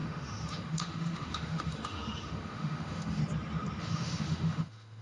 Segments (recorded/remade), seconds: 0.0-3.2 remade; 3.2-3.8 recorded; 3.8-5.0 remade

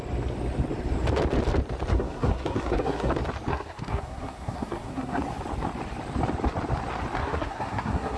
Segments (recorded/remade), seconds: 0.0-1.9 recorded; 1.9-3.1 remade; 3.1-3.5 recorded; 3.5-5.2 remade; 5.2-7.2 recorded; 7.2-8.2 remade

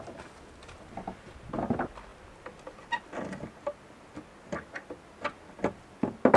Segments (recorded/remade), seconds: 0.0-6.4 recorded

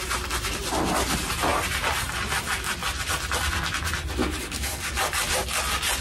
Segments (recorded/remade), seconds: 0.0-4.2 recorded; 4.2-5.3 remade; 5.3-6.0 recorded